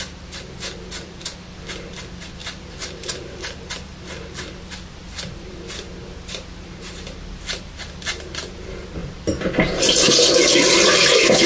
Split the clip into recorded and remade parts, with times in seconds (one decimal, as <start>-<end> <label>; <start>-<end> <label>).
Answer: 0.0-11.5 recorded